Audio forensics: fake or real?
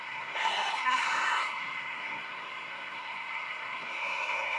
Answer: fake